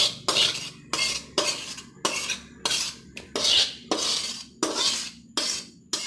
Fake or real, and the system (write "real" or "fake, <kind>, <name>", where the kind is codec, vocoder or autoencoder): real